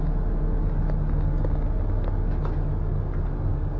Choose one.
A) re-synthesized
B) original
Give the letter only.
B